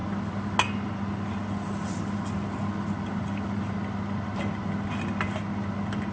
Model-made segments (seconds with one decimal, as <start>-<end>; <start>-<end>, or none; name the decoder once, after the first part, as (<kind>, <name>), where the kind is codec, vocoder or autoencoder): none